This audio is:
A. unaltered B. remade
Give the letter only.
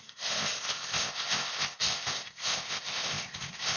B